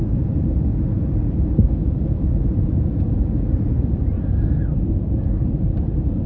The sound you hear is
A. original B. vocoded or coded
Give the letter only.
B